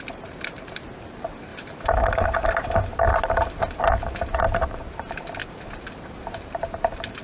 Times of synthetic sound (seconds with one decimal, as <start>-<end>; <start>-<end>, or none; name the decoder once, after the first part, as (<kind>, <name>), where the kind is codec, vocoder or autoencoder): 0.0-1.5 (vocoder, BigVGAN v2); 4.4-7.2